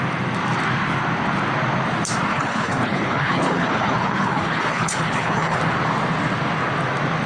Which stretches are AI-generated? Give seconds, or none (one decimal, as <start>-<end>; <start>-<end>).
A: 2.3-5.6